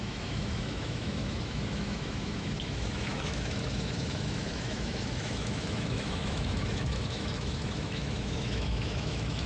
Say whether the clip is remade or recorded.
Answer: remade